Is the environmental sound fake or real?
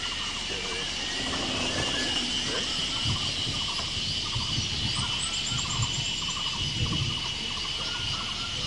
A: real